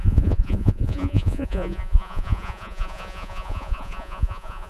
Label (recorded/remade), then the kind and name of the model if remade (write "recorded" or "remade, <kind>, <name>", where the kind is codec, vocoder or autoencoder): remade, vocoder, Vocos